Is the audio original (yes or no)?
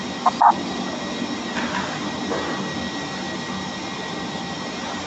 yes